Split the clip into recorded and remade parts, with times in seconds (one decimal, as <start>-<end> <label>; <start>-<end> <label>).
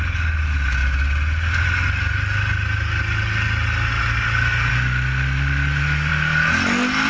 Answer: 0.0-7.1 recorded